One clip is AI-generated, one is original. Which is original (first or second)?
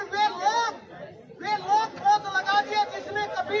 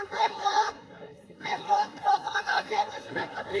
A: first